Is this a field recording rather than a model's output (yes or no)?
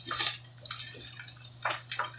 yes